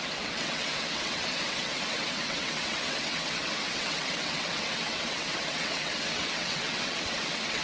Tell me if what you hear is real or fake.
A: fake